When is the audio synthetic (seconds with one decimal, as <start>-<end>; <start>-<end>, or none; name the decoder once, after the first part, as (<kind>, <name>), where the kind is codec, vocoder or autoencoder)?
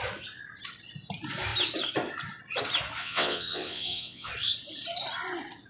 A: 3.0-4.3 (vocoder, WaveNeXt)